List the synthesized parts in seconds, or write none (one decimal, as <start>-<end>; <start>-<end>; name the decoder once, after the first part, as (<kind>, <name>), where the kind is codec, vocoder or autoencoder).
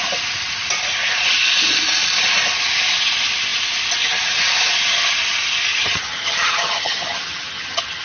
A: 5.7-8.0 (vocoder, HiFi-GAN)